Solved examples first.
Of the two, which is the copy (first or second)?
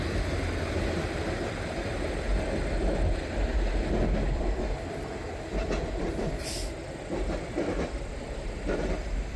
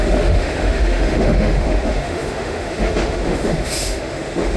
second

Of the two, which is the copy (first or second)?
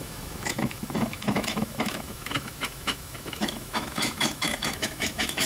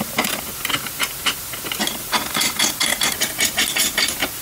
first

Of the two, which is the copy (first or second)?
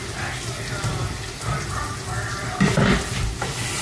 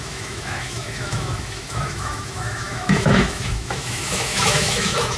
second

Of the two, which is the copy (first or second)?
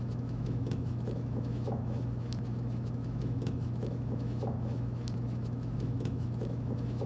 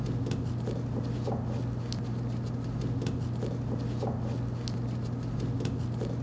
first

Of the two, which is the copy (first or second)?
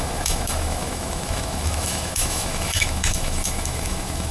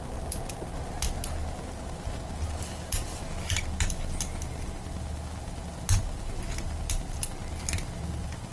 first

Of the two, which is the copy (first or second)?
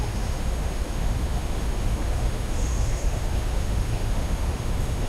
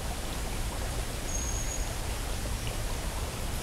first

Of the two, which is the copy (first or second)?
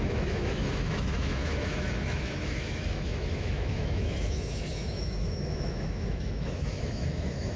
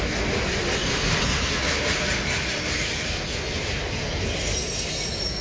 first